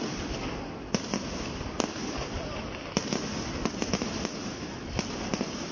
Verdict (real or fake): real